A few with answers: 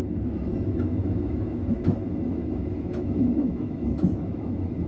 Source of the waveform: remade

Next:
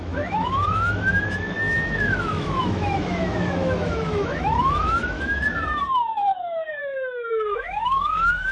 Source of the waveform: remade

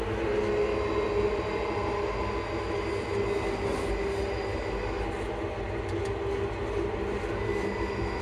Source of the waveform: recorded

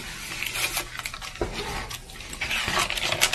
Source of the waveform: recorded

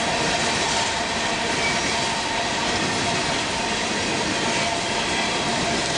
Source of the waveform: recorded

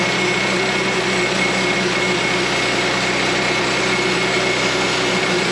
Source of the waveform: recorded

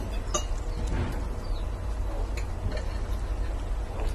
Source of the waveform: recorded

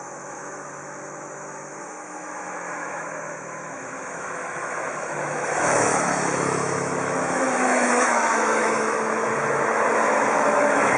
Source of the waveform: remade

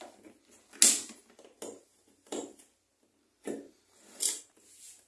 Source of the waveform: recorded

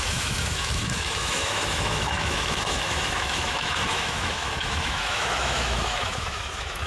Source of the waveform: remade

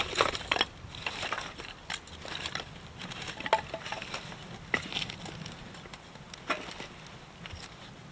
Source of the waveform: recorded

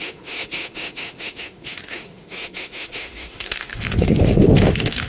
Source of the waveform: remade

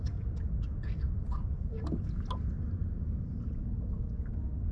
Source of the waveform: recorded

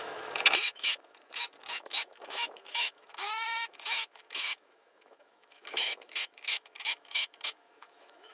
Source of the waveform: remade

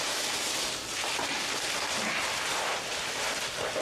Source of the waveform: recorded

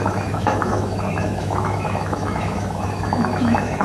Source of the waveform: remade